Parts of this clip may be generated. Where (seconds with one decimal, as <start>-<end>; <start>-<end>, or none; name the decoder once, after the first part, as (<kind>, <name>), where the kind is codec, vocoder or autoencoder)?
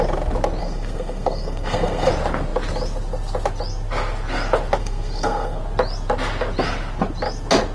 0.6-2.1 (codec, SNAC); 4.8-5.6